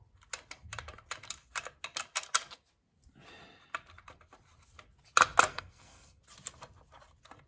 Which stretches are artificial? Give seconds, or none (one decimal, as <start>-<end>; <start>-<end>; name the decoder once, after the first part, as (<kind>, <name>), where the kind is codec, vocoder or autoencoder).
5.5-6.2 (codec, SNAC)